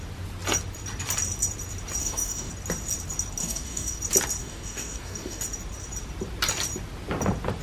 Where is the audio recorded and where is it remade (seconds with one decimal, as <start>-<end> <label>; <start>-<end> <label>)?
0.0-2.0 recorded; 2.0-2.5 remade; 2.5-3.4 recorded; 3.4-4.0 remade; 4.0-4.4 recorded; 4.4-5.4 remade; 5.4-7.6 recorded